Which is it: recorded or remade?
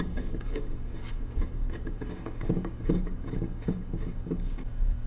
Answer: remade